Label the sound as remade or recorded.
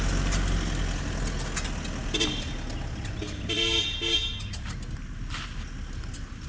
recorded